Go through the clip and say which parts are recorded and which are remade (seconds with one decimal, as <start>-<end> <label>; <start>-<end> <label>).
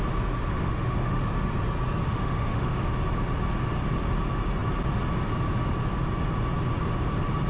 0.0-0.5 recorded; 0.5-1.2 remade; 1.2-2.0 recorded; 2.0-2.9 remade; 2.9-7.5 recorded